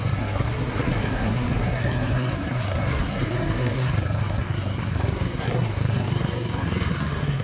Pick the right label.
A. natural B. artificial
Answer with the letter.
B